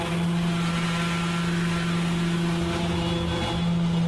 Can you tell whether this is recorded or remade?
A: recorded